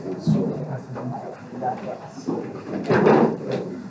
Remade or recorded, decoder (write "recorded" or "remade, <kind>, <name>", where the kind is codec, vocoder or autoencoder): remade, vocoder, BigVGAN v2